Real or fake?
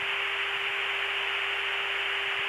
real